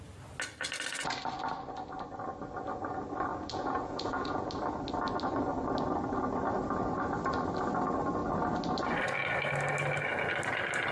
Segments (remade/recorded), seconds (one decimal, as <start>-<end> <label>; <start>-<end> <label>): 0.0-3.3 recorded; 3.3-4.5 remade; 4.5-10.9 recorded